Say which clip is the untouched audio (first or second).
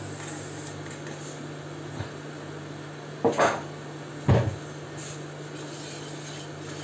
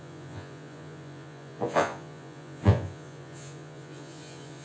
first